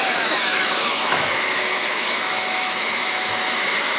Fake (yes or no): yes